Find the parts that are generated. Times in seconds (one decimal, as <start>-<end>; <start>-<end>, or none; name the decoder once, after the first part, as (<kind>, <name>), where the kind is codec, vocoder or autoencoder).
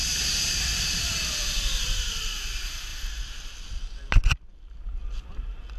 none